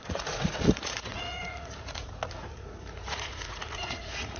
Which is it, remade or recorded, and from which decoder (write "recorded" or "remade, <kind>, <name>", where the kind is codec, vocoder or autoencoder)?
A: remade, vocoder, Vocos